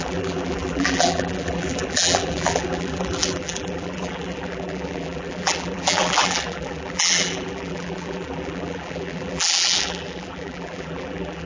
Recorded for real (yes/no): no